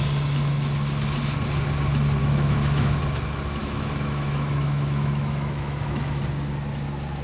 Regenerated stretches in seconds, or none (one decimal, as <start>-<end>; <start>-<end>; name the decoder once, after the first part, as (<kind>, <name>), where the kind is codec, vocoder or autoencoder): 2.2-3.0 (autoencoder, DAC-VAE); 3.6-6.2